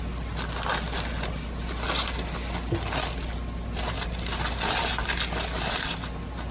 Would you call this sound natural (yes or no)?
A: yes